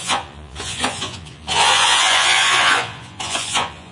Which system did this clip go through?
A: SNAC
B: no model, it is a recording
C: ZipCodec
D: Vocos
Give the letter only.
D